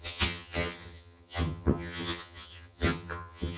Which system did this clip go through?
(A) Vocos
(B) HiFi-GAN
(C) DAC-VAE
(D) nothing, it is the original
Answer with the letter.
B